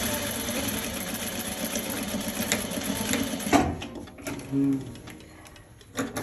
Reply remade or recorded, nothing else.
recorded